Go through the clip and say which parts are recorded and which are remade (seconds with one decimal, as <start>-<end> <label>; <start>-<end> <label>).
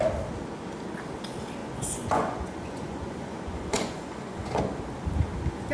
0.0-1.6 recorded; 1.6-4.6 remade; 4.6-5.7 recorded